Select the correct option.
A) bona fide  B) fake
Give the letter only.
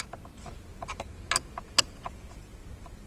A